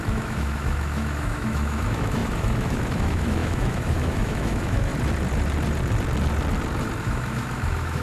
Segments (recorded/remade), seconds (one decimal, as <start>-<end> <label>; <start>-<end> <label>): 0.0-4.9 remade; 4.9-7.0 recorded; 7.0-8.0 remade